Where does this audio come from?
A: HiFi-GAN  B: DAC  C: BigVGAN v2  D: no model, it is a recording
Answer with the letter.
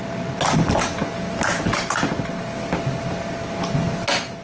D